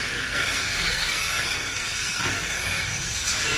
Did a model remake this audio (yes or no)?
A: yes